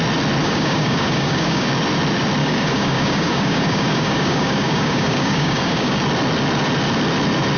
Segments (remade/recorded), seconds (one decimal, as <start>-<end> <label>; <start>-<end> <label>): 0.0-0.4 recorded; 0.4-1.7 remade; 1.7-2.4 recorded; 2.4-6.0 remade; 6.0-7.6 recorded